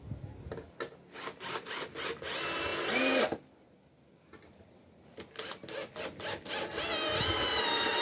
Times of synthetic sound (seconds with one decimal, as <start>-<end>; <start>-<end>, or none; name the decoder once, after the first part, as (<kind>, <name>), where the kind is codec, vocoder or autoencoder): none